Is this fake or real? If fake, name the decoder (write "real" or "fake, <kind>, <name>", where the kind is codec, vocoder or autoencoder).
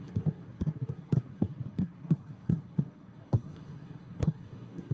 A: fake, codec, SNAC